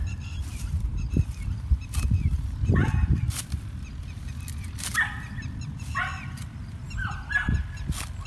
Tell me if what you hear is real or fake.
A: fake